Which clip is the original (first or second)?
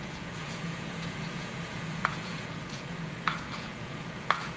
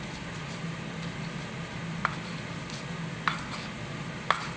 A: second